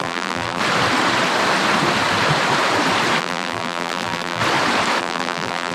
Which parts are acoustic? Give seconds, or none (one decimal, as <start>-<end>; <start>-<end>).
0.6-3.2; 4.4-5.0